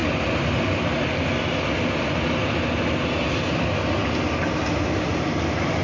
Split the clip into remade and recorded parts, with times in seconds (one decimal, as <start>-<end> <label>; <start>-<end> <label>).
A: 0.0-5.8 recorded

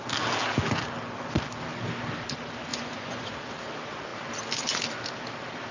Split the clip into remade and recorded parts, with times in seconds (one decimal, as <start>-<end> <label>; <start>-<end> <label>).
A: 0.0-2.7 recorded; 2.7-3.3 remade; 3.3-5.7 recorded

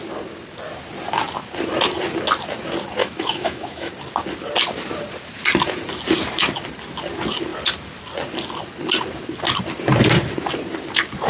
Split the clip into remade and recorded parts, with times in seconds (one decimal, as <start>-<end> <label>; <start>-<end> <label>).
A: 0.0-3.0 recorded; 3.0-3.9 remade; 3.9-11.3 recorded

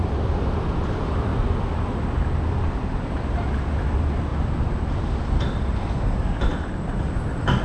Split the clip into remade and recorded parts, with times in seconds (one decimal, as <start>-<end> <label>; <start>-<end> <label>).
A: 0.0-1.3 remade; 1.3-2.7 recorded; 2.7-7.6 remade

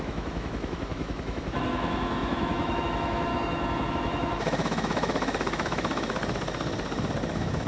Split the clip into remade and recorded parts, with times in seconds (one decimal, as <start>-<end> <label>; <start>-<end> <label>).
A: 0.0-3.3 remade; 3.3-3.9 recorded; 3.9-6.2 remade; 6.2-7.3 recorded; 7.3-7.7 remade

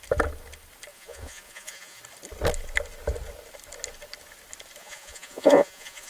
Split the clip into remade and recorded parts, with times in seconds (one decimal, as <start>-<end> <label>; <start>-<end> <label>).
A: 0.0-0.9 recorded; 0.9-2.0 remade; 2.0-4.8 recorded; 4.8-6.1 remade

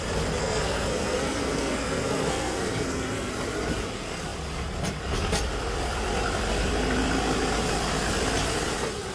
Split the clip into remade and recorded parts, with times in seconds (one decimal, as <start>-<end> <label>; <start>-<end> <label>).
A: 0.0-0.4 recorded; 0.4-3.3 remade; 3.3-9.1 recorded